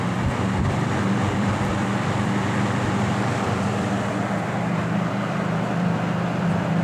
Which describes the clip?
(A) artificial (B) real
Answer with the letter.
A